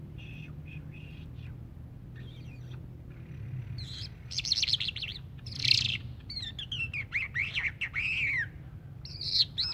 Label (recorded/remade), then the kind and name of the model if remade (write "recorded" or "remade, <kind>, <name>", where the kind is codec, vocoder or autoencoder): recorded